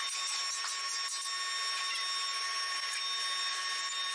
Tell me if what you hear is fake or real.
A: real